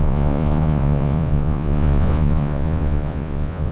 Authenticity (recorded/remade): remade